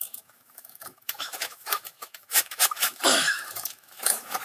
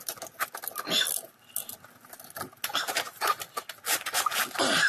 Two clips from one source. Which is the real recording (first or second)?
second